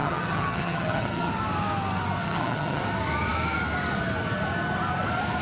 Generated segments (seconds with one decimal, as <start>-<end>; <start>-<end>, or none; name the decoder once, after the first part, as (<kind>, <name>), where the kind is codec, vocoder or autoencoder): 0.0-1.3 (vocoder, HiFi-GAN); 2.2-2.8